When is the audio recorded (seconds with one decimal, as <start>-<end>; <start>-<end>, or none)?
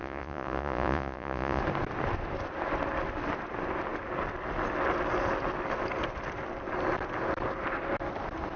1.6-8.6